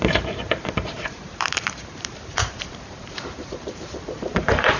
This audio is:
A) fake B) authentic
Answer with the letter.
A